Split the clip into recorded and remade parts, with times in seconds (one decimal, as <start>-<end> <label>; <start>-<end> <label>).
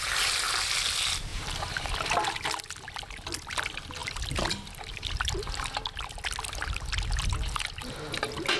0.0-8.6 recorded